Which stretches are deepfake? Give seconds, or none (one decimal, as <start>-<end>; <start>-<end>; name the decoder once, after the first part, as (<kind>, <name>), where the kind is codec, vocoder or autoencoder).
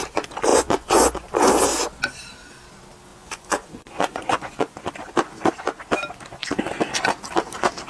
0.5-1.5 (vocoder, Vocos); 3.1-4.8